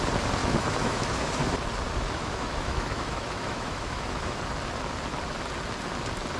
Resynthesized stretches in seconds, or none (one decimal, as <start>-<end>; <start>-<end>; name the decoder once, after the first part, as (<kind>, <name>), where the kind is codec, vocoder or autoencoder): 0.4-1.3 (autoencoder, DAC-VAE); 2.2-4.4